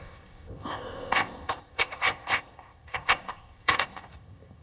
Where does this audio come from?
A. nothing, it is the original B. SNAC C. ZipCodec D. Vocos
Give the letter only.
C